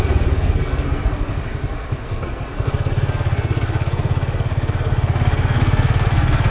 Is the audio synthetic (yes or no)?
yes